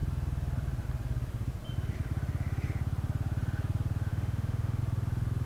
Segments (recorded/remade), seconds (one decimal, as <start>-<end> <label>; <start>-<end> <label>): 0.0-4.1 recorded; 4.1-4.8 remade; 4.8-5.5 recorded